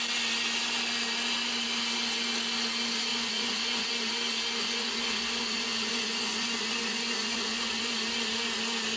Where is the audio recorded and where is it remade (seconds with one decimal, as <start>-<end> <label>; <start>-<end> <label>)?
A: 0.0-3.1 recorded; 3.1-3.9 remade; 3.9-4.6 recorded; 4.6-7.9 remade; 7.9-9.0 recorded